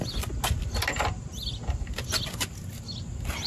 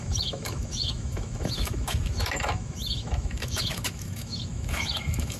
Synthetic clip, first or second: second